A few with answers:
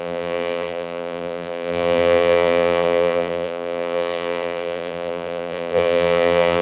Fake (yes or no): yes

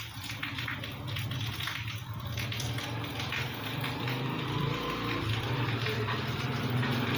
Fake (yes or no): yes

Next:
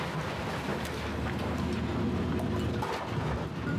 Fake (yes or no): no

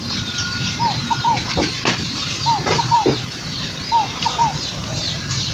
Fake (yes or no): yes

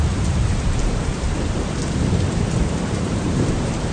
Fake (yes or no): yes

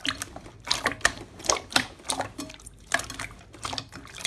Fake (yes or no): no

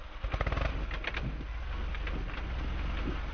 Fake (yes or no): no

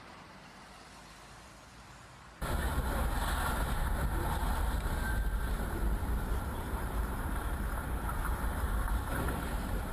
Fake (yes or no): yes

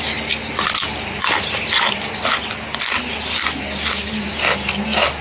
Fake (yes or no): no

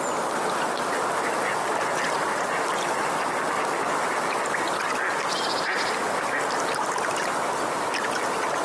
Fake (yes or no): no